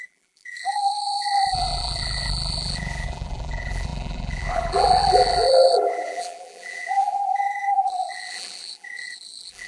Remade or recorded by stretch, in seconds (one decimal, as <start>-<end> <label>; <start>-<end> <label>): 0.0-9.7 remade